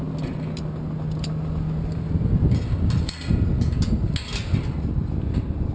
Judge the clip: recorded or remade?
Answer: recorded